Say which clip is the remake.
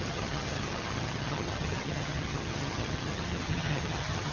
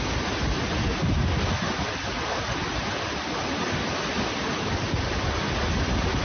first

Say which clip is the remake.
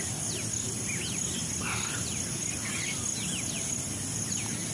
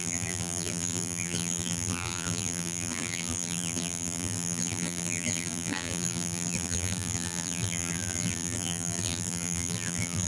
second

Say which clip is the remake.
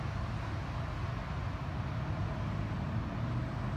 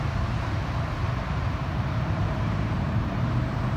second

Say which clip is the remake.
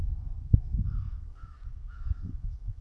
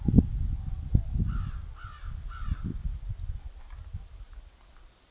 first